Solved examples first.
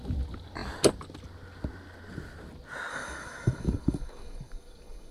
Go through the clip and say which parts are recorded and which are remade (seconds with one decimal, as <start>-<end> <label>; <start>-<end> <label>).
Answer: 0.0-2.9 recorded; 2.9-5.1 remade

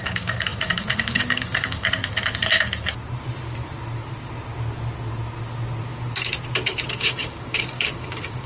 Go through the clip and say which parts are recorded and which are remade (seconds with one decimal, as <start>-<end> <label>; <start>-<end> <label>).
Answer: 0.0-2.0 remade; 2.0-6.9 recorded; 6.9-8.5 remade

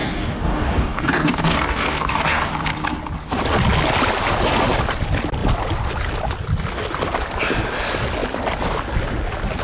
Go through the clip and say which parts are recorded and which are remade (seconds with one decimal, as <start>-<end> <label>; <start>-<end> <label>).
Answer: 0.0-2.5 remade; 2.5-9.6 recorded

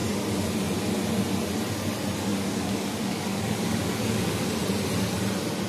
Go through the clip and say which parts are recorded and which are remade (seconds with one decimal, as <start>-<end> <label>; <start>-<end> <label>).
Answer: 0.0-2.3 recorded; 2.3-4.5 remade; 4.5-5.7 recorded

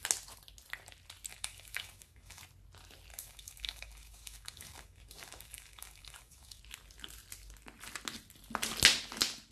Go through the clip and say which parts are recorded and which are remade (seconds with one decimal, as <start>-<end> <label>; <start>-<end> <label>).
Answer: 0.0-1.3 recorded; 1.3-2.4 remade; 2.4-3.1 recorded; 3.1-6.6 remade; 6.6-9.5 recorded

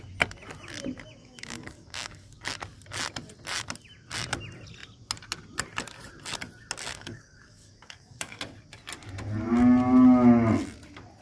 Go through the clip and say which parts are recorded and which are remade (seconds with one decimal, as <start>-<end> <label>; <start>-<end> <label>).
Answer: 0.0-1.2 recorded; 1.2-2.4 remade; 2.4-6.9 recorded; 6.9-8.4 remade; 8.4-11.2 recorded

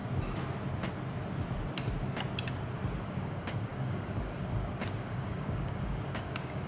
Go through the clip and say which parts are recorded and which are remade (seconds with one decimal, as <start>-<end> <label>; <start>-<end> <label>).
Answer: 0.0-3.0 recorded; 3.0-6.7 remade